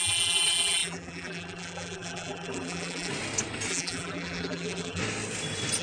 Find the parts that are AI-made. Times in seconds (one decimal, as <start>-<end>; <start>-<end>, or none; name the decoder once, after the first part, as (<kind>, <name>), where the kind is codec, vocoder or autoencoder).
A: 0.0-3.1 (vocoder, BigVGAN v2); 3.7-5.0